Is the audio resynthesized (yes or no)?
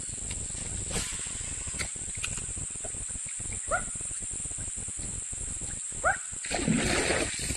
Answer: no